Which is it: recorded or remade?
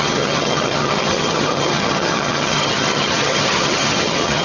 remade